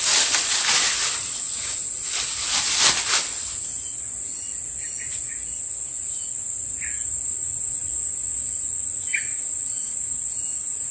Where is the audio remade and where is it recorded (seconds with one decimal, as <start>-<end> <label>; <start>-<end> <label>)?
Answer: 0.0-10.9 recorded

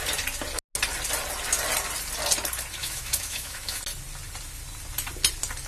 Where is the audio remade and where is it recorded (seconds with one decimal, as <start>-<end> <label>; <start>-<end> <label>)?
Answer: 0.0-2.8 recorded; 2.8-3.8 remade; 3.8-5.7 recorded

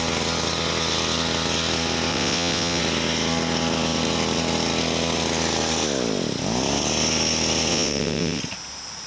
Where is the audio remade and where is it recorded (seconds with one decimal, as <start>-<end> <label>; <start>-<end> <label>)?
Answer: 0.0-2.1 recorded; 2.1-2.8 remade; 2.8-7.7 recorded; 7.7-8.4 remade; 8.4-9.1 recorded

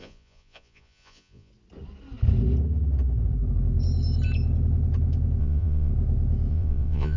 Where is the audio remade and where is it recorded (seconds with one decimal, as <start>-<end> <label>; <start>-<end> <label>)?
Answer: 0.0-1.5 remade; 1.5-5.4 recorded; 5.4-5.9 remade; 5.9-6.5 recorded; 6.5-7.2 remade

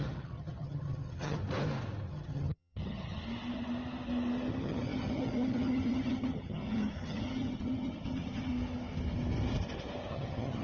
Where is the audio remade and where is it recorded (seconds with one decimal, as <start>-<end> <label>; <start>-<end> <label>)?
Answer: 0.0-1.4 remade; 1.4-2.1 recorded; 2.1-3.2 remade; 3.2-4.5 recorded; 4.5-8.5 remade; 8.5-10.1 recorded; 10.1-10.6 remade